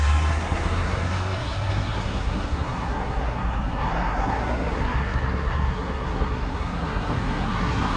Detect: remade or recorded remade